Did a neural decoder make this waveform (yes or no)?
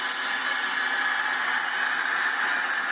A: no